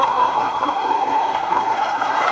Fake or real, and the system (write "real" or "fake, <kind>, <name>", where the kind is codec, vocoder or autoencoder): fake, codec, SNAC